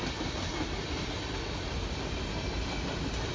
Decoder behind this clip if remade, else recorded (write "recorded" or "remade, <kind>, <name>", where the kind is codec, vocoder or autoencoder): recorded